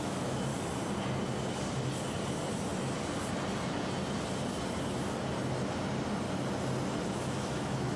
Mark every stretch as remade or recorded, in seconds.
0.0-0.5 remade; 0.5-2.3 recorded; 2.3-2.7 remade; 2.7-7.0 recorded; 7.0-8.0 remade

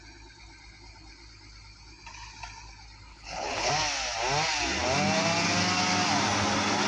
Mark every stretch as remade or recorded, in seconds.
0.0-3.1 recorded; 3.1-3.7 remade; 3.7-6.9 recorded